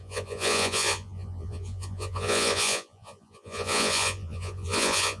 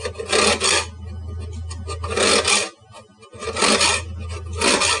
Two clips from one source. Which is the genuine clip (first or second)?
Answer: second